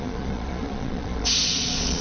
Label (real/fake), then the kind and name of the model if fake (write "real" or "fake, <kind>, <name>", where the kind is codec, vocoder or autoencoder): fake, vocoder, Vocos